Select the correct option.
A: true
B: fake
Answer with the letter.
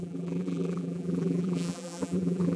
B